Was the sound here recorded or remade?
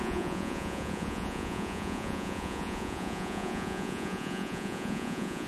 remade